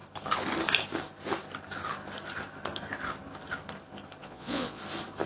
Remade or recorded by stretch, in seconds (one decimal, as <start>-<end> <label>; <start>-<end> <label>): 0.0-4.2 recorded; 4.2-4.8 remade; 4.8-5.3 recorded